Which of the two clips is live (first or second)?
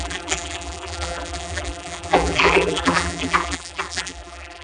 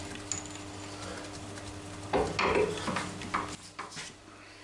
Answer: second